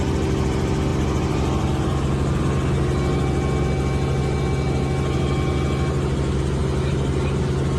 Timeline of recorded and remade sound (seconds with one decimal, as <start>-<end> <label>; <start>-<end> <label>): 0.0-0.9 recorded; 0.9-2.4 remade; 2.4-7.8 recorded